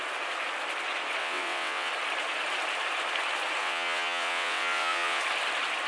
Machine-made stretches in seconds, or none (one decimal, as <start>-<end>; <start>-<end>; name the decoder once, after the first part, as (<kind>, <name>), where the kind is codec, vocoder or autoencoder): 1.2-1.9 (vocoder, WaveNeXt); 3.6-5.2